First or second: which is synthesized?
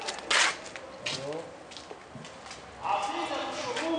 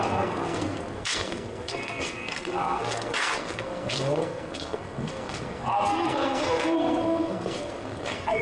second